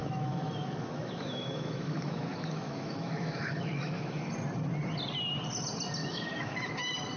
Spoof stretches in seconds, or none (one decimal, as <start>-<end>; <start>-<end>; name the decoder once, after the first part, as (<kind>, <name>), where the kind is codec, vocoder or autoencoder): 0.0-4.3 (autoencoder, DAC-VAE); 6.0-6.7

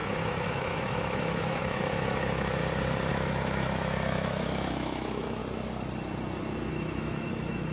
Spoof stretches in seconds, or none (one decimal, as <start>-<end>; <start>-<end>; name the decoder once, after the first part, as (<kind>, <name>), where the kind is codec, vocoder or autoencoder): 0.0-2.6 (autoencoder, DAC-VAE); 3.1-5.4; 6.7-7.7

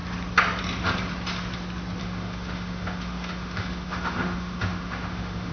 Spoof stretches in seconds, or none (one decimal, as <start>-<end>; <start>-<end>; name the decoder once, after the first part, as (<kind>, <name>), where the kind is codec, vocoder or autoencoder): 2.0-5.5 (autoencoder, DAC-VAE)

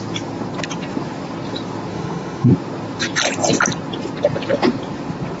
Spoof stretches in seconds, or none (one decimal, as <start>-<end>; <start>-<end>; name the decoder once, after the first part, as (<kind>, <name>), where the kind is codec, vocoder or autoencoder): 1.9-2.5 (autoencoder, DAC-VAE)